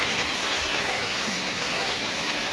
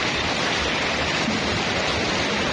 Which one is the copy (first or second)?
first